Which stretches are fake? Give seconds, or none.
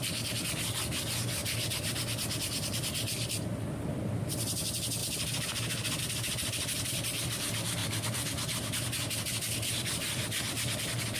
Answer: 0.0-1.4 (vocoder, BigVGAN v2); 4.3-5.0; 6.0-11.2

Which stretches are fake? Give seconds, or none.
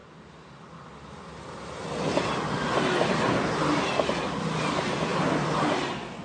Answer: none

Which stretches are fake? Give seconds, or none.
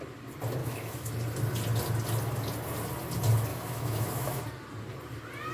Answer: 0.6-1.1 (autoencoder, DAC-VAE); 3.5-4.4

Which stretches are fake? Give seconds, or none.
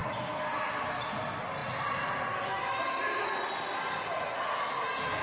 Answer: none